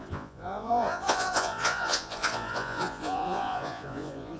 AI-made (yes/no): yes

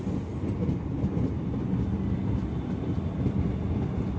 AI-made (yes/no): no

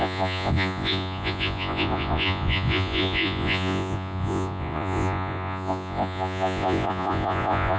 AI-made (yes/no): yes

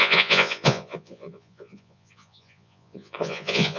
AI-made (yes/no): yes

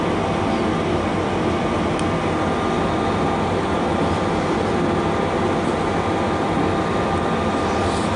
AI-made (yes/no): no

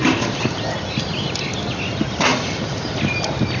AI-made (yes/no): no